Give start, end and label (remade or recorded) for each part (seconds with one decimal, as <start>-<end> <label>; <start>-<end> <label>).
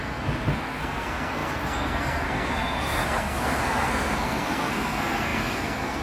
0.0-6.0 remade